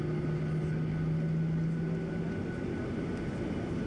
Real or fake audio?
real